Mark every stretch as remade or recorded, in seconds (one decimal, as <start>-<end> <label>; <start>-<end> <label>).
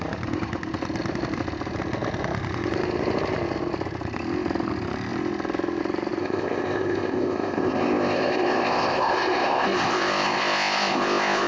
0.0-6.2 recorded; 6.2-11.5 remade